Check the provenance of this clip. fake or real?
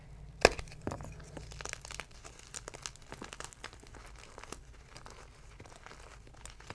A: real